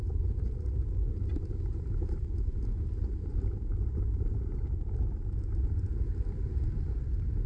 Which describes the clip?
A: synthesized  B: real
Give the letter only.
A